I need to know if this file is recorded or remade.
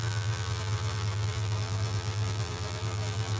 remade